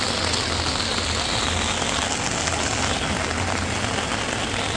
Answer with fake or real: real